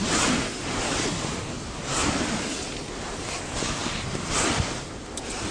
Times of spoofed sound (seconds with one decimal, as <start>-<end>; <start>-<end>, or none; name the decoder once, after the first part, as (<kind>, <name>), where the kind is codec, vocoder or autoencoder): none

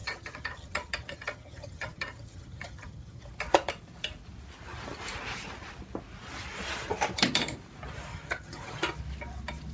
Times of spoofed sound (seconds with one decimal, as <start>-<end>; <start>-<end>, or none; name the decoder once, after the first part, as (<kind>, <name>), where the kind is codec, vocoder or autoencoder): 0.0-3.2 (vocoder, HiFi-GAN); 8.1-8.8